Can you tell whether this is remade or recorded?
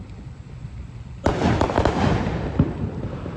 recorded